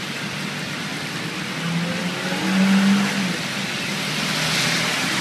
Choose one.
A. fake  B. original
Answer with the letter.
B